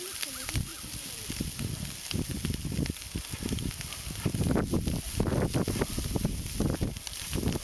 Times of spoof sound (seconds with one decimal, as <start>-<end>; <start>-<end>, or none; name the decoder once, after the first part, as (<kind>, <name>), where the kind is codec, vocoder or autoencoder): none